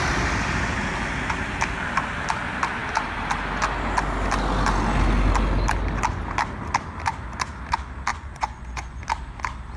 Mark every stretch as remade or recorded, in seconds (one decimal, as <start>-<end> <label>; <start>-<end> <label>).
0.0-8.1 recorded; 8.1-9.0 remade; 9.0-9.8 recorded